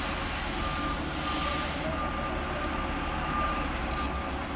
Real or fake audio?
real